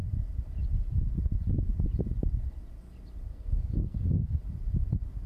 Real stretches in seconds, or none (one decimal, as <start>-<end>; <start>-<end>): 0.0-3.3; 4.4-5.3